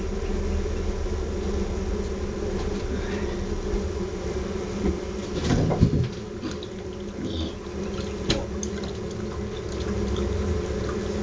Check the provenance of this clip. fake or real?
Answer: real